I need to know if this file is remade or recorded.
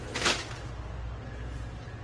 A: recorded